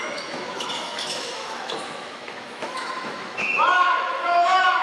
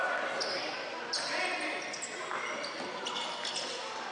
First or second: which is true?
second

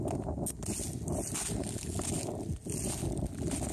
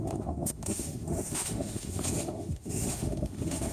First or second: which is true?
first